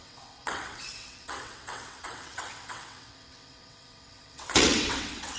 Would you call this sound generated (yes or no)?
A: yes